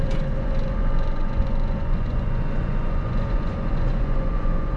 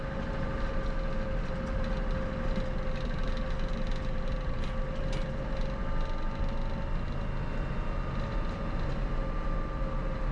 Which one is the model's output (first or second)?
first